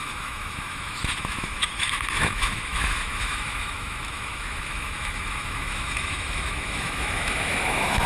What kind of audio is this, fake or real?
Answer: fake